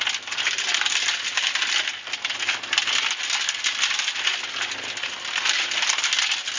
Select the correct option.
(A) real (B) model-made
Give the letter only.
A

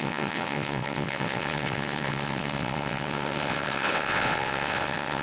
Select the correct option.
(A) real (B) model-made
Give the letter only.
B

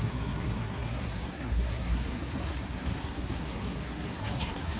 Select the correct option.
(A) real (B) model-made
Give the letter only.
B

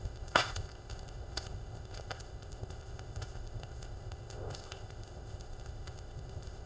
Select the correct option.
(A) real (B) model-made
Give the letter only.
B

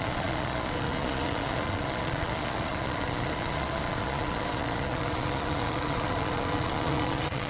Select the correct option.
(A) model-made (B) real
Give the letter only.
A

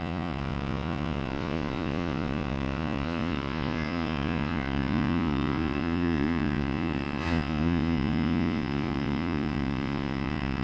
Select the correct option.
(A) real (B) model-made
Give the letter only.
B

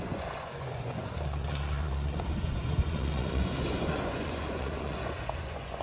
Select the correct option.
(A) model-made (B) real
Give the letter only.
A